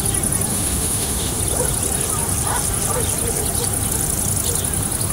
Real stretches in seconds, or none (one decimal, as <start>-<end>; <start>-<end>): 0.0-0.5; 1.4-5.1